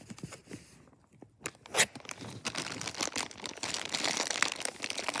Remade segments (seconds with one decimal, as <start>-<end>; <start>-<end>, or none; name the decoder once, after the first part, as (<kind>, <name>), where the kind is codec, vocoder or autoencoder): none